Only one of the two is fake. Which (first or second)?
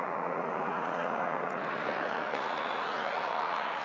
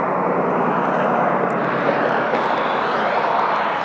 first